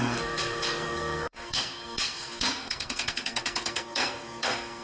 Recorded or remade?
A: remade